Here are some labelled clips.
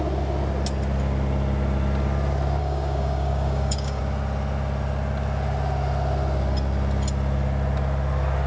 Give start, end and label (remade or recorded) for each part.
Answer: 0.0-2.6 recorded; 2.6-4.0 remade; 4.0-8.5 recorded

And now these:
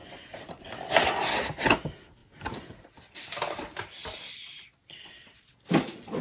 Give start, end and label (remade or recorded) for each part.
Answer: 0.0-0.6 remade; 0.6-2.2 recorded; 2.2-5.7 remade; 5.7-6.2 recorded

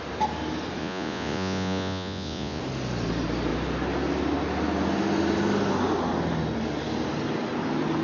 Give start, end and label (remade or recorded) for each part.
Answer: 0.0-0.8 recorded; 0.8-2.6 remade; 2.6-8.0 recorded

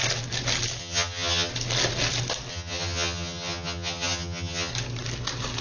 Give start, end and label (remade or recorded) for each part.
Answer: 0.0-0.8 recorded; 0.8-1.5 remade; 1.5-2.5 recorded; 2.5-4.7 remade; 4.7-5.6 recorded